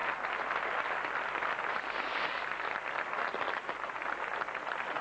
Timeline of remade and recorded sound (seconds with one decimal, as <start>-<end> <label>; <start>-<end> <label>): 0.0-5.0 recorded